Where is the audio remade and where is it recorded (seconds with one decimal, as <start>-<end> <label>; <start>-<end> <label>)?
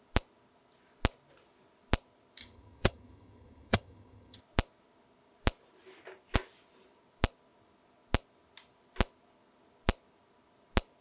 0.0-2.4 recorded; 2.4-4.4 remade; 4.4-11.0 recorded